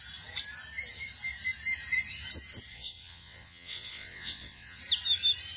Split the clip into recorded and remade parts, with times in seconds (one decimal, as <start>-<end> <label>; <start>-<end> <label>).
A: 0.0-2.7 recorded; 2.7-4.8 remade; 4.8-5.6 recorded